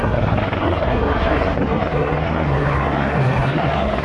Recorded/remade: remade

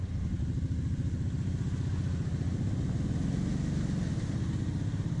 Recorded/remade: recorded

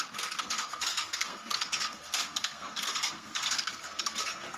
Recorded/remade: remade